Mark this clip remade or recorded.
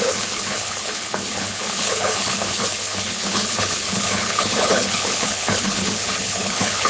remade